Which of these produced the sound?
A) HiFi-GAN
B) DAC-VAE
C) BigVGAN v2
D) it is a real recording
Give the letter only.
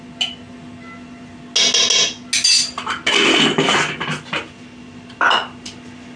D